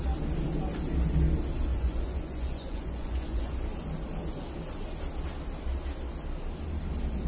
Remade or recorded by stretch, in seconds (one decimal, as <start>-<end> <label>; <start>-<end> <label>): 0.0-1.7 recorded; 1.7-3.5 remade; 3.5-7.3 recorded